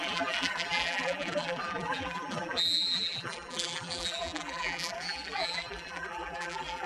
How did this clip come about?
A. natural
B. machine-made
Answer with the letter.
B